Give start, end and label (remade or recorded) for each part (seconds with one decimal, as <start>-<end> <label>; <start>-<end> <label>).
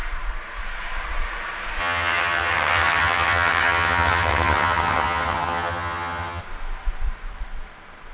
0.0-1.8 recorded; 1.8-6.4 remade; 6.4-8.1 recorded